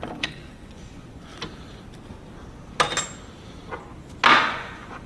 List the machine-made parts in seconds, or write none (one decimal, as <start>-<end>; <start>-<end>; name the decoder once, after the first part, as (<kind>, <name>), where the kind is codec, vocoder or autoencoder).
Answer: 0.0-1.3 (vocoder, Vocos); 4.4-5.1